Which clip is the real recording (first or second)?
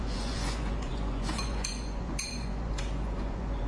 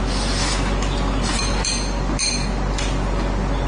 second